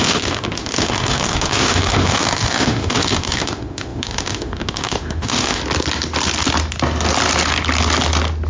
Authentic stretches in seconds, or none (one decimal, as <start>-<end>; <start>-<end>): 5.6-8.5